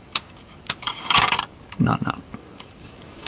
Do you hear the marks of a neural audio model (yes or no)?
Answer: yes